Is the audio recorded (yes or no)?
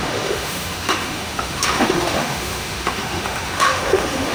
no